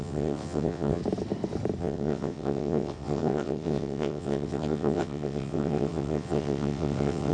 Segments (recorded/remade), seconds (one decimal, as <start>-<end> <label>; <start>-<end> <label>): 0.0-1.0 remade; 1.0-1.8 recorded; 1.8-7.3 remade

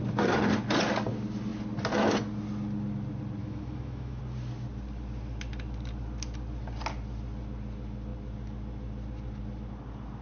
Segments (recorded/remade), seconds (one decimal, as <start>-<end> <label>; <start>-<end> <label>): 0.0-3.4 recorded; 3.4-4.2 remade; 4.2-10.2 recorded

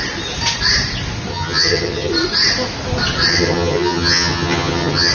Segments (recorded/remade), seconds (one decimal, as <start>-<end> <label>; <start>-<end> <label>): 0.0-1.3 recorded; 1.3-2.1 remade; 2.1-3.3 recorded; 3.3-5.1 remade

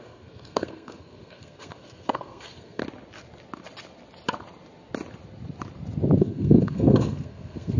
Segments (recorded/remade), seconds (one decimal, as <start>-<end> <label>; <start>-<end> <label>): 0.0-2.8 remade; 2.8-6.2 recorded; 6.2-7.8 remade

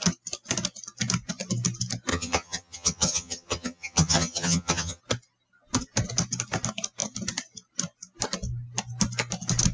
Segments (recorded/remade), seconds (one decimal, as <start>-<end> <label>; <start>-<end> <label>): 0.0-2.1 recorded; 2.1-5.0 remade; 5.0-9.7 recorded